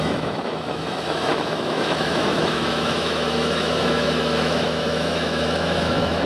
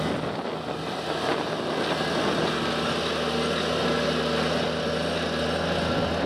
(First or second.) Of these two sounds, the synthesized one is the first